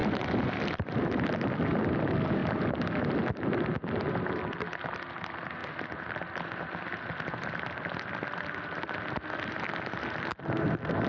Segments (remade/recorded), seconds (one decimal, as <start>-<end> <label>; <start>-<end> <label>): 0.0-11.1 recorded